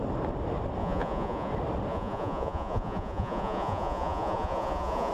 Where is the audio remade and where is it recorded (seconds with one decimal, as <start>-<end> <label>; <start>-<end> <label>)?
0.0-0.8 recorded; 0.8-1.5 remade; 1.5-1.9 recorded; 1.9-5.1 remade